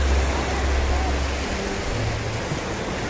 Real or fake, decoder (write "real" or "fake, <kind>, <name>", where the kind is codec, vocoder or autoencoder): real